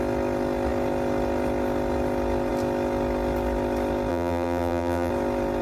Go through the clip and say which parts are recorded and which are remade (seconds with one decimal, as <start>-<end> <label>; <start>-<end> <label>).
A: 0.0-4.1 recorded; 4.1-5.1 remade; 5.1-5.6 recorded